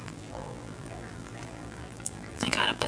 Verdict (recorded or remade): remade